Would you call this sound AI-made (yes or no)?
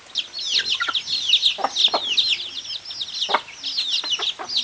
no